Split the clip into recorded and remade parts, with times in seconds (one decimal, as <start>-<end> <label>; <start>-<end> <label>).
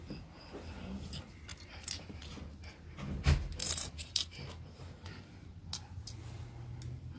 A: 0.0-1.5 recorded; 1.5-2.7 remade; 2.7-3.6 recorded; 3.6-4.6 remade; 4.6-7.2 recorded